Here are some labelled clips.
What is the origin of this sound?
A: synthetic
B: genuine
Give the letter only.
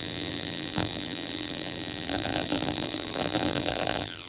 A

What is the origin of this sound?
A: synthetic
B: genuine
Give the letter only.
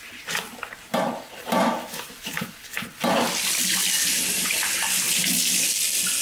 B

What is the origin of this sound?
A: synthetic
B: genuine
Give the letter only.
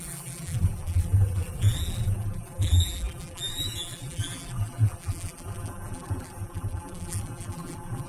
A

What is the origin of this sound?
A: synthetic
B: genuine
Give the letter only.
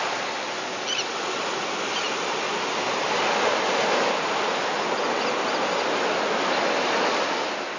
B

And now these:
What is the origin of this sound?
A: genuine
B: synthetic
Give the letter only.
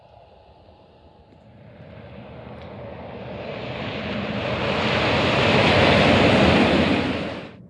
A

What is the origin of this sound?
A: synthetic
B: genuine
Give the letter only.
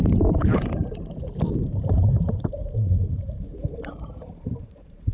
A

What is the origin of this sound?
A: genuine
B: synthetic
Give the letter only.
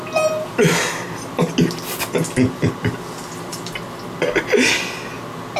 A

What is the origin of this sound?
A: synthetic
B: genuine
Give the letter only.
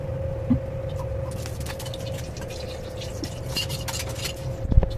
B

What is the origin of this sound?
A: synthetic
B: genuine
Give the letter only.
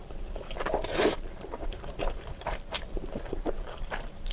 A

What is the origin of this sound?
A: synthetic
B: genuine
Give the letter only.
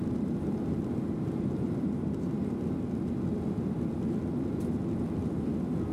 B